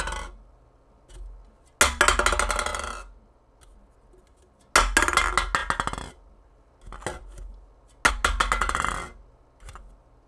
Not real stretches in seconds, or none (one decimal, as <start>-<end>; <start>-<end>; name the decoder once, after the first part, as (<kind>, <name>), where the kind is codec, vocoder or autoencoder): none